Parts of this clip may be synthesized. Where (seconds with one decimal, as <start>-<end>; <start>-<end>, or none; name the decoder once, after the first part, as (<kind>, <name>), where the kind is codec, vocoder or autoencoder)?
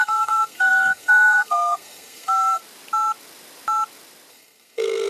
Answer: 0.0-2.6 (codec, SNAC); 4.3-5.1